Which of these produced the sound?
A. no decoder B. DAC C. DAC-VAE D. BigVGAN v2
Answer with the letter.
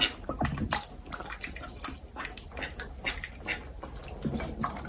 A